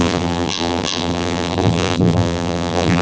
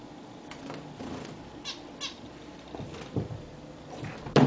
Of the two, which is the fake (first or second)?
first